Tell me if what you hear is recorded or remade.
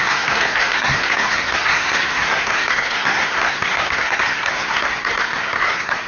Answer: remade